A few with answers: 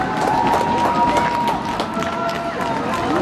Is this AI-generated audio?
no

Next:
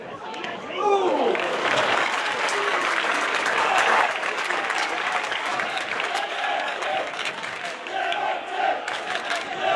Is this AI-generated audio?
yes